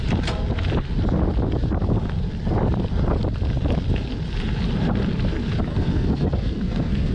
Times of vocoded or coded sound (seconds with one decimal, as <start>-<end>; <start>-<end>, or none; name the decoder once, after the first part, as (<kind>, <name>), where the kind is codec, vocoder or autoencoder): 5.7-7.1 (codec, SNAC)